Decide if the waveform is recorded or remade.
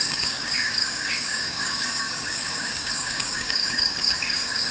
remade